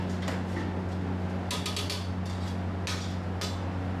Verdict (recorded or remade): recorded